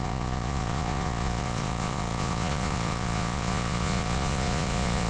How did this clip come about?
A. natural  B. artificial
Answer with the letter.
B